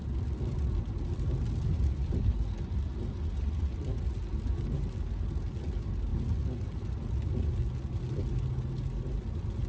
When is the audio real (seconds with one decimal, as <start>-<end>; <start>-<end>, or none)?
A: 0.0-9.7